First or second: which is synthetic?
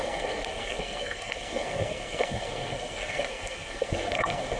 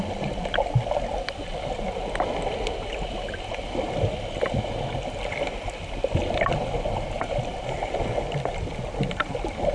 first